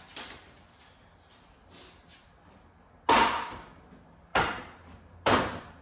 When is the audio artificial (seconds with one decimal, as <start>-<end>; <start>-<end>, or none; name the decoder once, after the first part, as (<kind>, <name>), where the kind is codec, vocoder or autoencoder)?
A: 4.3-5.8 (vocoder, BigVGAN v2)